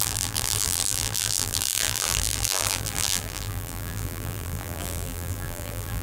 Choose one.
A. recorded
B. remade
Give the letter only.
B